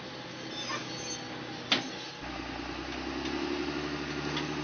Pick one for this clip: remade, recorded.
recorded